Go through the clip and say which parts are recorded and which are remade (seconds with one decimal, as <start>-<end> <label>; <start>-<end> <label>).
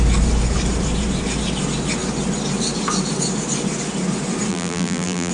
0.0-4.5 recorded; 4.5-5.3 remade